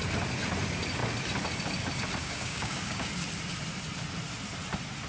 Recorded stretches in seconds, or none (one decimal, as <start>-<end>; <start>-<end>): 0.0-2.2; 3.1-5.1